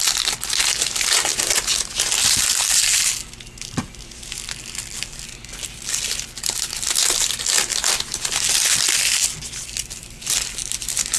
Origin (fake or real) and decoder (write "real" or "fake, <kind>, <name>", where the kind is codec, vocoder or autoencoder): real